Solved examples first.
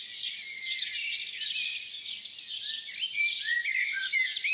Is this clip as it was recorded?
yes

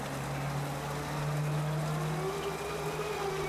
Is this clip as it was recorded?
yes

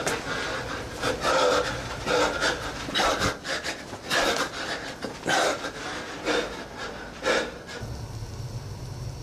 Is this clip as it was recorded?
yes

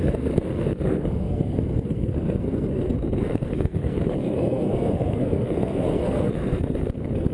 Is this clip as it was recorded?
no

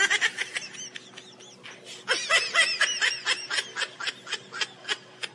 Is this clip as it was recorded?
yes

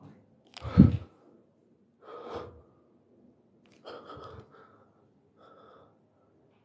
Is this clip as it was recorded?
yes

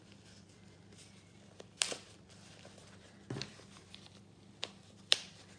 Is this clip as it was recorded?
no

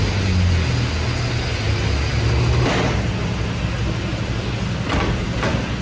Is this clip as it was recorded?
yes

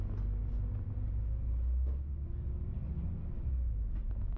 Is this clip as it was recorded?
yes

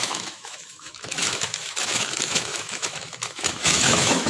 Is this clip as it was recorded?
no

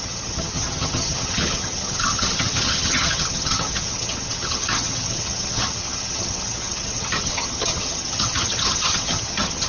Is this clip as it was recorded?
no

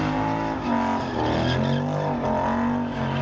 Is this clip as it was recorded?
yes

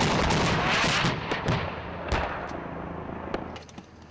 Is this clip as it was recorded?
yes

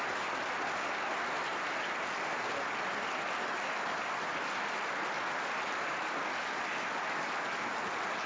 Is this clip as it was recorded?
yes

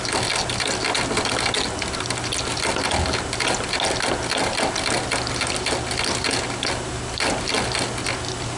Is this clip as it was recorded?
yes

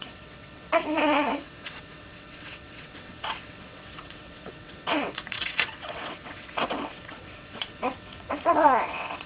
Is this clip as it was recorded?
no